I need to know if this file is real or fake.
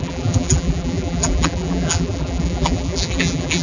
fake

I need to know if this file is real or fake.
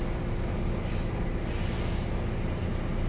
real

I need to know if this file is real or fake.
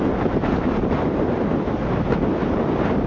real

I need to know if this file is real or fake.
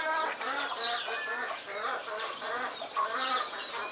real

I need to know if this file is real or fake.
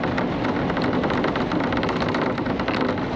real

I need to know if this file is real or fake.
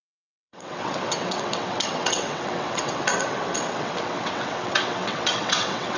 fake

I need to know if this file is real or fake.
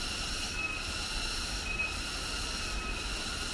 fake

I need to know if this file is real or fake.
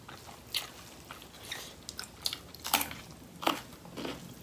real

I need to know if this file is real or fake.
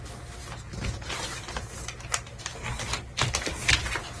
real